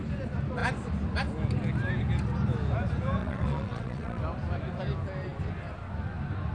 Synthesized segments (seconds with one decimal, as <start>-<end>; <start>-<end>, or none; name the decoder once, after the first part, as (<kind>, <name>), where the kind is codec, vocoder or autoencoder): 3.2-4.2 (vocoder, WaveNeXt)